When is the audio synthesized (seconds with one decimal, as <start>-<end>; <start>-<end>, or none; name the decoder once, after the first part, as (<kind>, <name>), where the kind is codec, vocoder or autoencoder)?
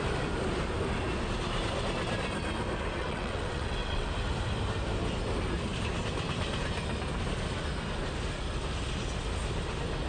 3.0-4.1 (vocoder, WaveNeXt)